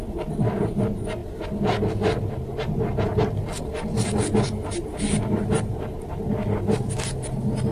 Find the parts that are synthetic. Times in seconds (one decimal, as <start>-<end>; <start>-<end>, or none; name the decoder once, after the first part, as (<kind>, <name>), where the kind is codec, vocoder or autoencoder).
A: none